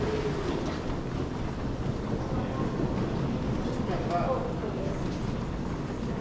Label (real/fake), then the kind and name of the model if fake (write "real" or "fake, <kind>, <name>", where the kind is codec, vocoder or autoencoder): real